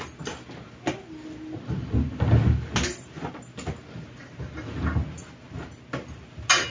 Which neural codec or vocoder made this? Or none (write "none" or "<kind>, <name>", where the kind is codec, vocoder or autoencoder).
none